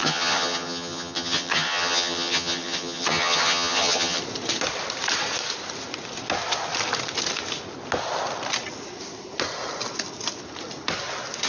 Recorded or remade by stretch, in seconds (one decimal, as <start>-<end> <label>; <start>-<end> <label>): 0.0-4.2 remade; 4.2-11.5 recorded